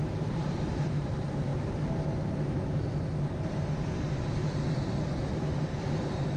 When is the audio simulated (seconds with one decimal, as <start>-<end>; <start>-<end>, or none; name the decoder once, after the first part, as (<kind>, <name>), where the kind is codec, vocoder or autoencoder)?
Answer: 0.0-1.5 (vocoder, BigVGAN v2); 2.3-6.4